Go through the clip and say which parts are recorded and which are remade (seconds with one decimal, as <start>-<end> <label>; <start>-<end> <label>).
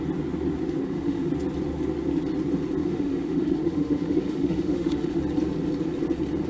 0.0-0.8 recorded; 0.8-1.3 remade; 1.3-2.8 recorded; 2.8-5.2 remade; 5.2-6.5 recorded